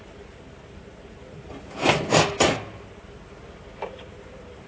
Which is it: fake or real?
real